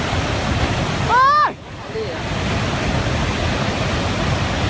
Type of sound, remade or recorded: recorded